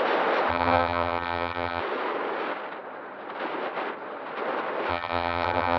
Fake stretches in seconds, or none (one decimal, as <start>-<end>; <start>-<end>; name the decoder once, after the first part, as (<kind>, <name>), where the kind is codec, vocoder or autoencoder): 0.5-1.8 (vocoder, HiFi-GAN); 4.9-5.8